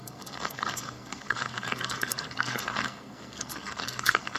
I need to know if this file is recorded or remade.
remade